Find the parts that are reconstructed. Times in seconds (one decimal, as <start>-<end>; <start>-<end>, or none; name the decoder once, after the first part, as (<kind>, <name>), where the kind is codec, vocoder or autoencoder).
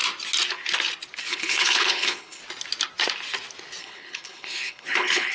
1.2-2.4 (codec, HILCodec); 3.8-5.3